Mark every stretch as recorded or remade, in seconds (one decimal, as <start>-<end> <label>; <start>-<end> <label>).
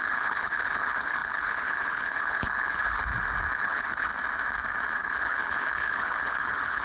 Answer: 0.0-3.0 remade; 3.0-3.6 recorded; 3.6-4.1 remade; 4.1-5.0 recorded; 5.0-6.8 remade